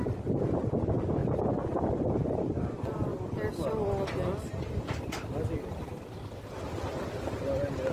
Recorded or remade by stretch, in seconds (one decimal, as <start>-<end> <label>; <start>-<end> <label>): 0.0-7.9 recorded